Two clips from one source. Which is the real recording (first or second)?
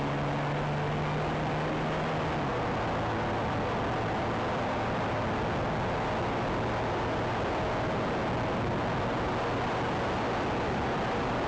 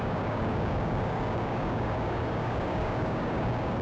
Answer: first